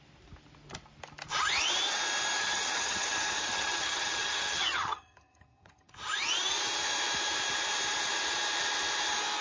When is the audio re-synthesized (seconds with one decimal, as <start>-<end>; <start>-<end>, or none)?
2.4-5.9